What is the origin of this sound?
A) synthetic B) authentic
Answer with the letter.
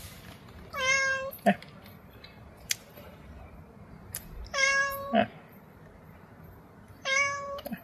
A